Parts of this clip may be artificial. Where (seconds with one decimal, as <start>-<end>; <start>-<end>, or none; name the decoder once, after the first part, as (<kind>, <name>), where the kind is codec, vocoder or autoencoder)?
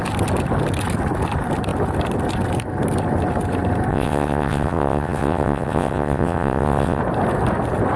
3.9-7.0 (vocoder, WaveNeXt)